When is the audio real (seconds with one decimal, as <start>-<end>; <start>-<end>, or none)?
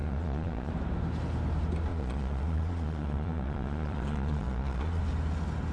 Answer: 0.7-1.9; 5.0-5.7